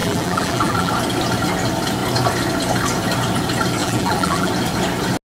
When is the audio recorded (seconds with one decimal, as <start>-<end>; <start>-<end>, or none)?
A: 0.9-3.8; 4.5-5.3